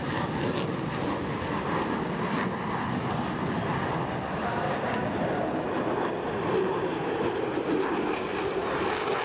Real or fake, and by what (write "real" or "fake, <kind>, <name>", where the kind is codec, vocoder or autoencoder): real